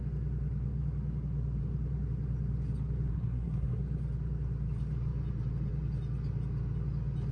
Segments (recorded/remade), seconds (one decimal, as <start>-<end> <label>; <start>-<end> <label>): 0.0-3.1 recorded; 3.1-3.8 remade; 3.8-7.3 recorded